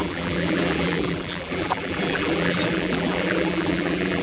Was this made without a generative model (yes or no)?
no